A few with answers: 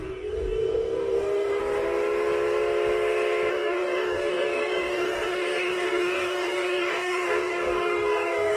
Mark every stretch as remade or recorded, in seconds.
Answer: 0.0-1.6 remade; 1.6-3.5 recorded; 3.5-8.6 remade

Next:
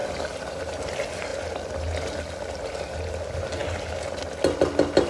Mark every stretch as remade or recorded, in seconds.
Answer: 0.0-0.8 remade; 0.8-5.1 recorded